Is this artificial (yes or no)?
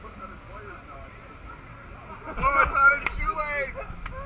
no